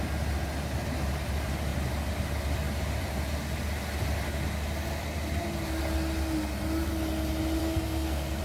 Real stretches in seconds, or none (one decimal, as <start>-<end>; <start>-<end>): 0.0-7.6